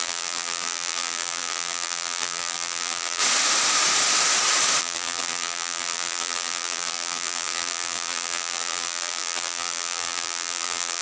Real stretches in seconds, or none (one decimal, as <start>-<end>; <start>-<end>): 3.2-4.8